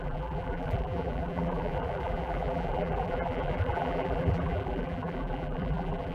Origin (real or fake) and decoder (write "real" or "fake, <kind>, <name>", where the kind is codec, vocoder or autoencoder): fake, vocoder, BigVGAN v2